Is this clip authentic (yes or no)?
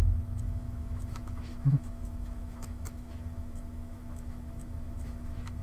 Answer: no